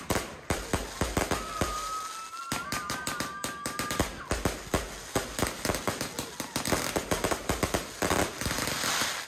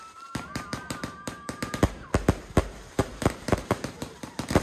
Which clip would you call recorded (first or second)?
first